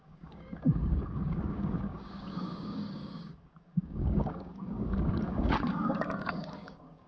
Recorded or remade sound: remade